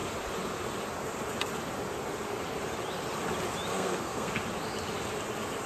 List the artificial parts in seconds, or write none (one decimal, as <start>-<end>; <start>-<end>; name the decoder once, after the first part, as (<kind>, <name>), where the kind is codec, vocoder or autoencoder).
3.7-4.3 (codec, SNAC)